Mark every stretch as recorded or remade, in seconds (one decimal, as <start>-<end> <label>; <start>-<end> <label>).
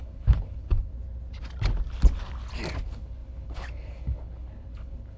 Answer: 0.0-0.9 remade; 0.9-2.8 recorded; 2.8-5.2 remade